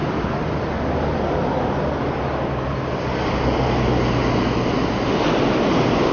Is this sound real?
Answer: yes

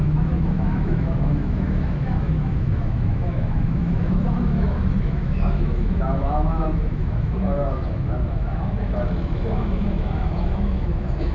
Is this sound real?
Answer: no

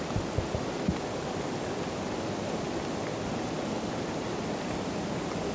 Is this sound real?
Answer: yes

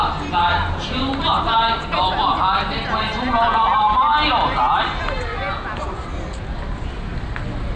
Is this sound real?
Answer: yes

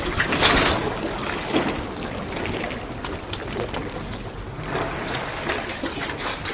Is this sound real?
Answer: no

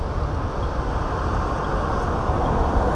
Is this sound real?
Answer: yes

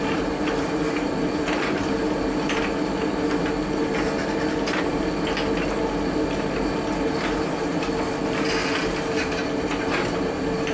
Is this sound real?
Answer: yes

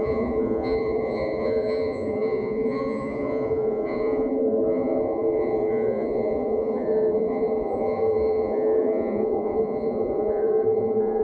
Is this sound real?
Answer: no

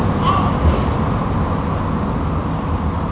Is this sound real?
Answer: no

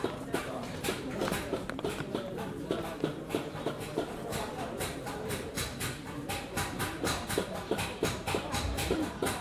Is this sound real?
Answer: no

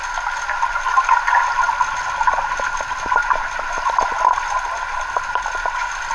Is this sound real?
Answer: yes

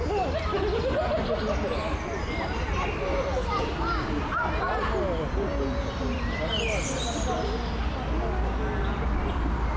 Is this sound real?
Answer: yes